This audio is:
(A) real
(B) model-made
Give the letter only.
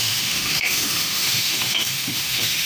B